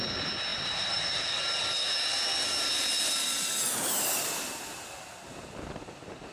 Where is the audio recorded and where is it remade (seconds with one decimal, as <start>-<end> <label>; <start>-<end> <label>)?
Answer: 0.0-0.5 recorded; 0.5-1.5 remade; 1.5-6.3 recorded